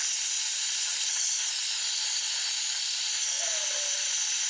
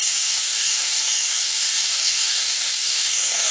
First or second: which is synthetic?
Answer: second